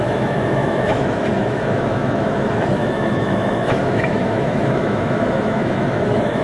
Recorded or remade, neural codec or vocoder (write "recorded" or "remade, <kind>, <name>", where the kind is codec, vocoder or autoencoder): remade, autoencoder, DAC-VAE